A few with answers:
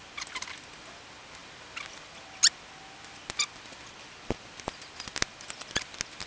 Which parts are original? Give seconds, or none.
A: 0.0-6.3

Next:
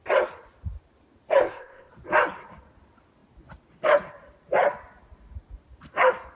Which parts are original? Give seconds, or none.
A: 0.0-1.4; 1.9-6.3

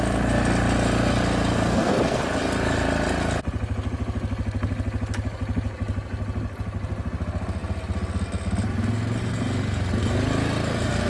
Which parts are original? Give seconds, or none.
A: 0.0-1.5; 2.2-11.1

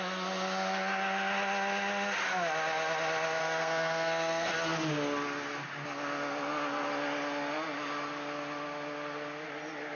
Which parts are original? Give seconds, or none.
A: 0.0-3.4; 4.5-9.9

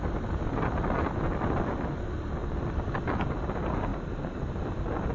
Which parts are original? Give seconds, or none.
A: 0.0-5.1